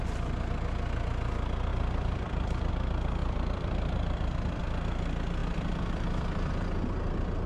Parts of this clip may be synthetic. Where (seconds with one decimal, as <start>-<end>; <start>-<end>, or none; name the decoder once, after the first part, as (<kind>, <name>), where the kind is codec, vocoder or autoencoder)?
1.7-2.7 (vocoder, BigVGAN v2); 3.2-4.6; 5.4-6.5